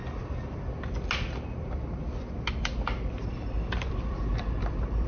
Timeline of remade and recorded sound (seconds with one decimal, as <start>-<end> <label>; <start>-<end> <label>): 0.0-2.6 recorded; 2.6-5.1 remade